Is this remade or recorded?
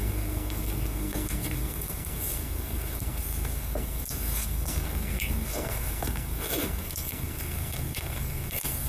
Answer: remade